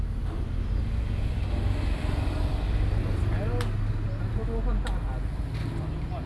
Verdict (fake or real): real